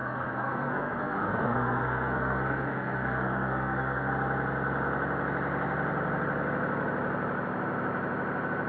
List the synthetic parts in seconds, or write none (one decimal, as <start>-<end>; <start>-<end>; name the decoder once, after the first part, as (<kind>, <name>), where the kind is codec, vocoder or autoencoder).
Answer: 0.0-4.1 (codec, SNAC)